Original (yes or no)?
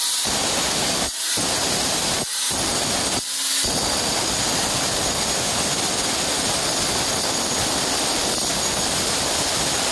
yes